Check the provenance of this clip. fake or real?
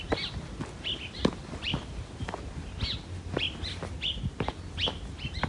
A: real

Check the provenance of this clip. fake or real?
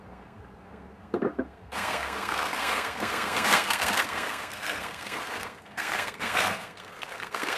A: fake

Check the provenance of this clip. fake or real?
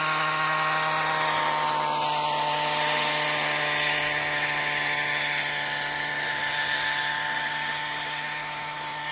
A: real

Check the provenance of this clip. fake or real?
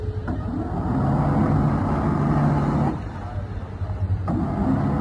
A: real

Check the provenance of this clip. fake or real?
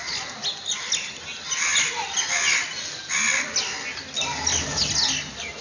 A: real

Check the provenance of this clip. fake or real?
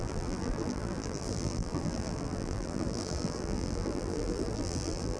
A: fake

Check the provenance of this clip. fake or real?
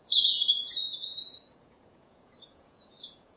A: fake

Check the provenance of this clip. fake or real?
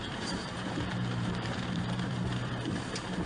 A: fake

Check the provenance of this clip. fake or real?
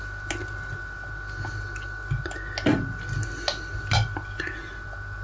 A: real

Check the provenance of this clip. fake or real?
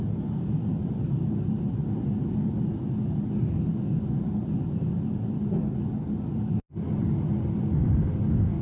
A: real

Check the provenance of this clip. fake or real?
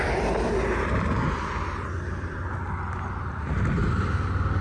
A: real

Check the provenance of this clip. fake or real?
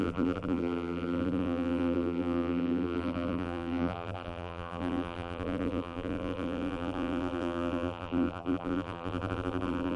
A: fake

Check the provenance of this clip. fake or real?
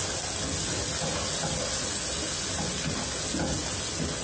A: real